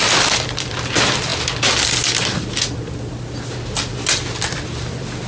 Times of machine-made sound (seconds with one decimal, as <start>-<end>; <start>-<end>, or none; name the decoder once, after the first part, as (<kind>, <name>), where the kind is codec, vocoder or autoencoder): 0.0-1.3 (vocoder, BigVGAN v2); 4.5-5.3